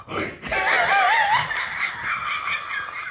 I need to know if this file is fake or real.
real